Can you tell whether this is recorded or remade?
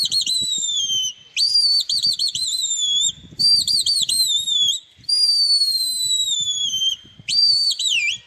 remade